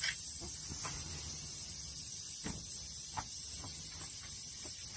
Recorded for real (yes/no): yes